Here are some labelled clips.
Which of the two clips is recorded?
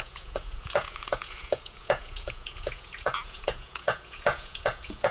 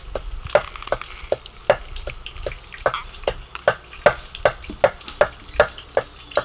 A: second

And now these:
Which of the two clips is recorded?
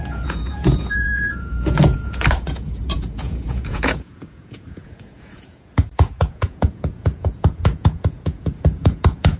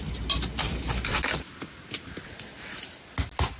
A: second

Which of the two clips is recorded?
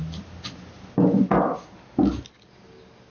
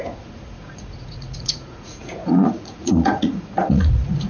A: first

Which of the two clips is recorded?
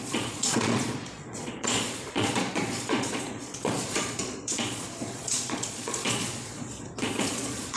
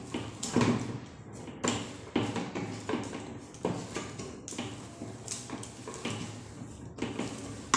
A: second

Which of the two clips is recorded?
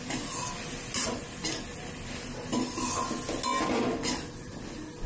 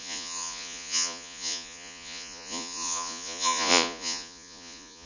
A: first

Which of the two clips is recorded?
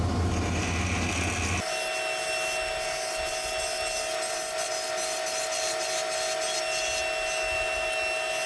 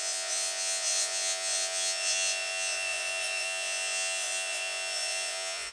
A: first